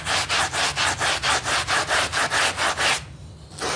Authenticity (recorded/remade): recorded